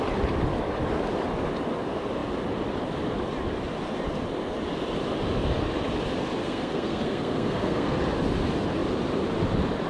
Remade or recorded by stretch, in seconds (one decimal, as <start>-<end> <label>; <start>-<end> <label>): 0.0-6.4 recorded; 6.4-8.0 remade; 8.0-9.9 recorded